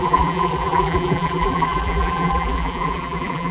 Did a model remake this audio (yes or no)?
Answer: yes